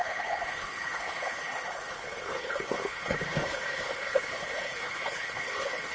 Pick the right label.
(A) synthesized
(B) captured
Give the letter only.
A